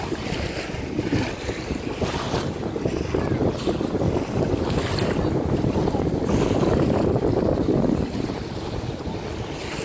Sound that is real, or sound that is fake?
real